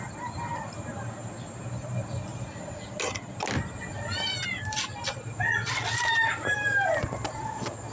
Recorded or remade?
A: recorded